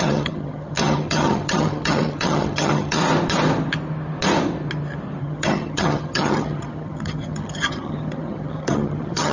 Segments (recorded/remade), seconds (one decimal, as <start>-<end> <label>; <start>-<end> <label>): 0.0-3.0 remade; 3.0-5.2 recorded; 5.2-9.3 remade